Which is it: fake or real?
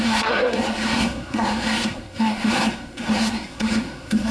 fake